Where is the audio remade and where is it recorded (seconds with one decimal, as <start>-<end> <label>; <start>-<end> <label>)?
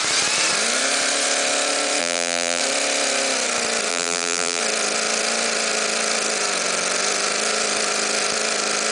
0.0-2.0 recorded; 2.0-2.6 remade; 2.6-3.9 recorded; 3.9-4.6 remade; 4.6-8.9 recorded